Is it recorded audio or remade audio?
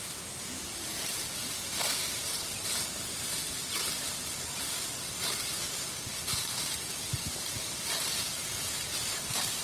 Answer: recorded